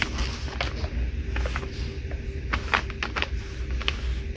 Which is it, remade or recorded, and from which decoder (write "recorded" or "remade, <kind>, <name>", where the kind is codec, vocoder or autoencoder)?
recorded